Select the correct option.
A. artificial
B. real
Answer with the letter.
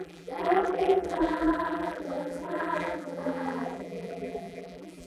A